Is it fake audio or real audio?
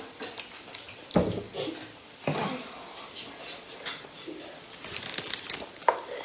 real